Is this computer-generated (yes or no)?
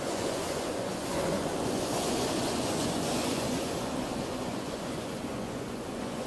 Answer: yes